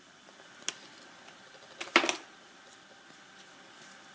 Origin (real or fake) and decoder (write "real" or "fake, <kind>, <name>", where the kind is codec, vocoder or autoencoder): real